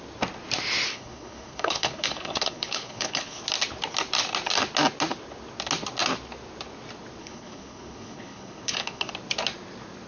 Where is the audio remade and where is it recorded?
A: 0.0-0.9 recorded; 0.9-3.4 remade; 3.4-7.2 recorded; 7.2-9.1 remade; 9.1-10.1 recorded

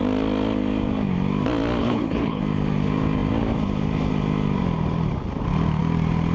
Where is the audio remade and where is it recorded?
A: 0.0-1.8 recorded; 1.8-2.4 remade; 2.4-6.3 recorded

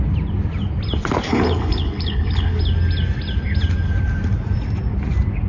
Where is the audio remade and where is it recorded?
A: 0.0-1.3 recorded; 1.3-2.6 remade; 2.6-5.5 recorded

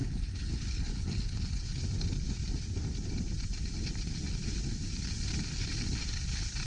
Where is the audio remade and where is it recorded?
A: 0.0-1.8 remade; 1.8-6.7 recorded

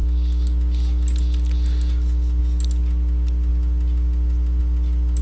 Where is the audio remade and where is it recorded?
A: 0.0-5.2 recorded